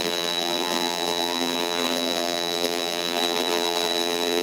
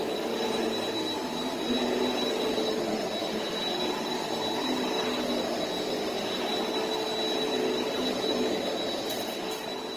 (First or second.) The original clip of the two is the second